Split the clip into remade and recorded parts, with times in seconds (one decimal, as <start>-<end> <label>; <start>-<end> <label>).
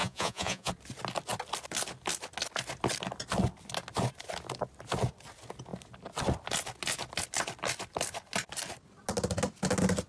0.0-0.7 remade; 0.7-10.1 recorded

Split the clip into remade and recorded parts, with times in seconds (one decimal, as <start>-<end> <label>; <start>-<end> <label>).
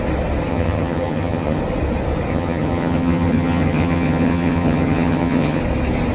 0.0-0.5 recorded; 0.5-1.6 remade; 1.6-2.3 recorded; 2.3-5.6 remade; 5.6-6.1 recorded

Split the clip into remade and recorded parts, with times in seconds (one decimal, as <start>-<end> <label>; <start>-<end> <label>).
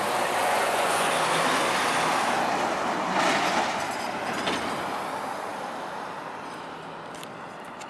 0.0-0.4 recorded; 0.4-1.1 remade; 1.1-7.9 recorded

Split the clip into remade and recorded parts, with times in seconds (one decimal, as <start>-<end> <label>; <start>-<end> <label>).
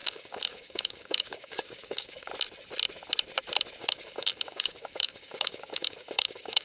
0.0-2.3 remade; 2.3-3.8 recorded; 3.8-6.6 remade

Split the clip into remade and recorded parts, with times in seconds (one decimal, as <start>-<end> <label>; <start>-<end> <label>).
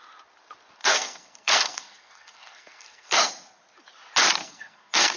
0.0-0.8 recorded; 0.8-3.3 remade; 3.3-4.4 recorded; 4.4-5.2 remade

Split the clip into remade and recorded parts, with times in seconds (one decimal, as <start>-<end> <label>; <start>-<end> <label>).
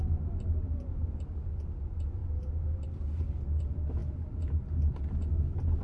0.0-5.8 recorded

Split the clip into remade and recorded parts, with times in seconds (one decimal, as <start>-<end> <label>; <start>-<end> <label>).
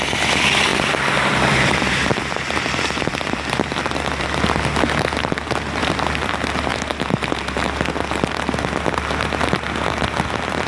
0.0-0.7 recorded; 0.7-4.4 remade; 4.4-5.8 recorded; 5.8-6.3 remade; 6.3-10.7 recorded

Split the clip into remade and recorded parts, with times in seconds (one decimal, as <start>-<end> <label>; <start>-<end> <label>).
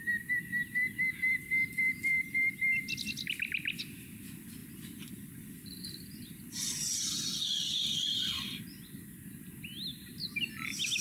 0.0-2.1 recorded; 2.1-2.6 remade; 2.6-11.0 recorded